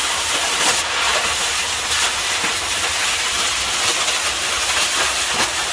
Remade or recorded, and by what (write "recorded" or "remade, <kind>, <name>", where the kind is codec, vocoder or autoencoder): recorded